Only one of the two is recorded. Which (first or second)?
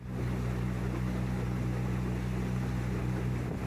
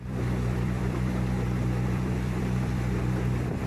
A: first